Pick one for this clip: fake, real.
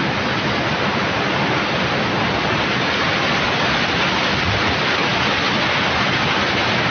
real